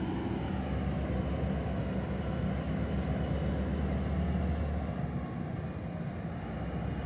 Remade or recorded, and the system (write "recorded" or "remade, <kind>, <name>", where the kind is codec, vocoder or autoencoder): recorded